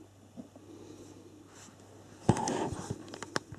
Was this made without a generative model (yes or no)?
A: yes